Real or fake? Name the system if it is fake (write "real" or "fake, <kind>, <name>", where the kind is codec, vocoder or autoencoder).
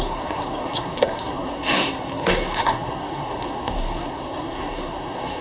fake, codec, SNAC